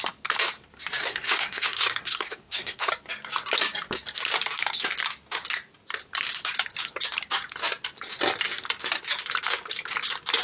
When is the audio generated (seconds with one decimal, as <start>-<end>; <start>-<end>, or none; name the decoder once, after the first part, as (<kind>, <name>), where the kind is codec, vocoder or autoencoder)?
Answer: 1.0-2.9 (codec, SNAC)